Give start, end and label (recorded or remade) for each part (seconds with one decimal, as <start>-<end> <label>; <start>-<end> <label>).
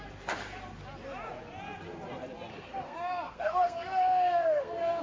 0.0-2.5 recorded; 2.5-5.0 remade